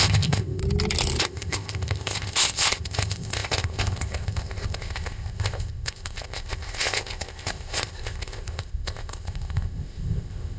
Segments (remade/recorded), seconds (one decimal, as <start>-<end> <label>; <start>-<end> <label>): 0.0-0.6 remade; 0.6-1.2 recorded; 1.2-10.6 remade